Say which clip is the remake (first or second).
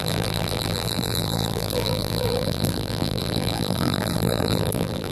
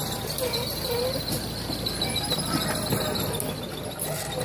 first